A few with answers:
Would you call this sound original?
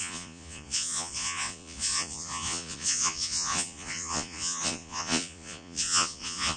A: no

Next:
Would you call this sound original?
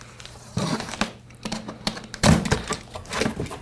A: yes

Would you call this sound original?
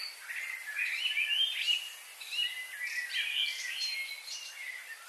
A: yes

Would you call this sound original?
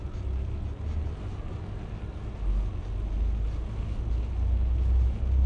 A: yes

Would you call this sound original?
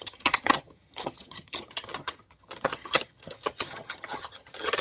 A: no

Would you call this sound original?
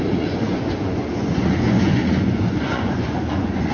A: no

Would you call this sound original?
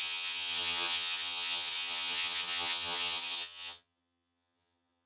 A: no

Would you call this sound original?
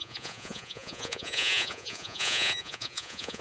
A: no